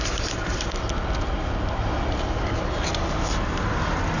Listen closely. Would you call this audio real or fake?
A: real